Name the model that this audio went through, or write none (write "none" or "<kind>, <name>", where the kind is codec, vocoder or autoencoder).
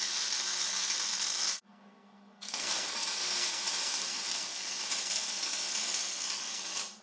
codec, SNAC